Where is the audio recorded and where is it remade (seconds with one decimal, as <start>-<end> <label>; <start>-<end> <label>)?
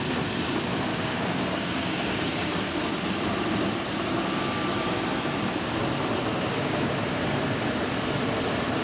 0.0-0.9 recorded; 0.9-2.5 remade; 2.5-6.3 recorded; 6.3-6.9 remade; 6.9-8.8 recorded